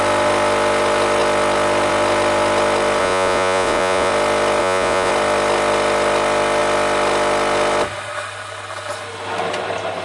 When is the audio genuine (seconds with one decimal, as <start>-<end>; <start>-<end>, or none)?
0.0-3.0; 4.1-4.6; 5.1-10.0